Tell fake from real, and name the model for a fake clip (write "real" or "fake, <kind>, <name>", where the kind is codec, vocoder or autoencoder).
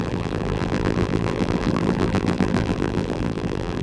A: fake, vocoder, BigVGAN v2